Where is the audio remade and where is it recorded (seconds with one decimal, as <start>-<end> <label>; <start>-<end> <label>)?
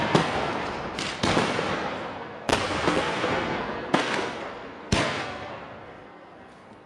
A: 0.0-0.6 remade; 0.6-1.7 recorded; 1.7-6.9 remade